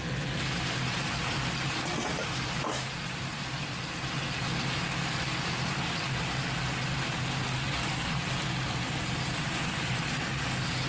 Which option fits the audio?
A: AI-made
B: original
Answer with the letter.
B